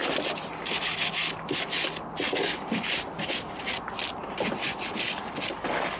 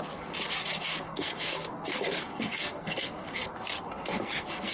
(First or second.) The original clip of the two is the first